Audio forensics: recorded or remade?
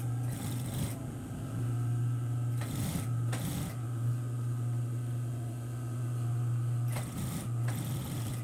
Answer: recorded